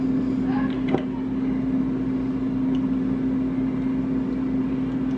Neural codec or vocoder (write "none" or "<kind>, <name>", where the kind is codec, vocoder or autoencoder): none